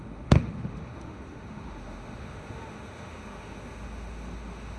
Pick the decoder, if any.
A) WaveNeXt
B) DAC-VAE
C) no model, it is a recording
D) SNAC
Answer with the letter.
B